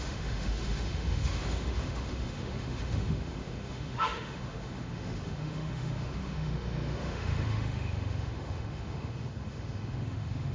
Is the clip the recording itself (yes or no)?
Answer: no